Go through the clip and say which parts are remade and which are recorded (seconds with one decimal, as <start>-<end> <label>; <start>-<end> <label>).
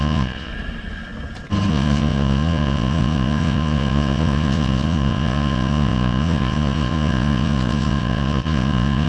0.0-0.5 remade; 0.5-1.7 recorded; 1.7-9.1 remade